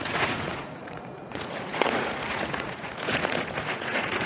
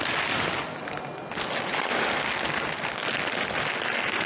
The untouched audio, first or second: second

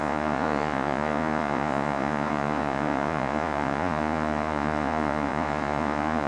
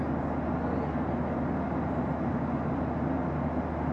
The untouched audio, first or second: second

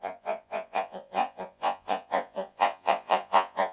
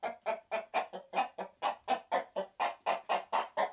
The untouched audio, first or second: second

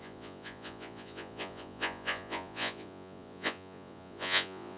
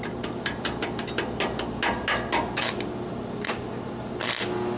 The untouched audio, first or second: second